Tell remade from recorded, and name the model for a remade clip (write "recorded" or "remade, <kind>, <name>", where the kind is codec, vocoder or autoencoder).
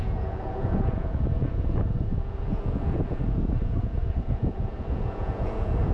remade, vocoder, Vocos